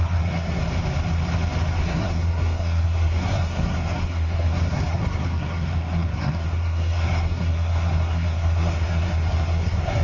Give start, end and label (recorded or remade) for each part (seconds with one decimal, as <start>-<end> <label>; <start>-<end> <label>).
0.0-0.6 remade; 0.6-1.8 recorded; 1.8-10.0 remade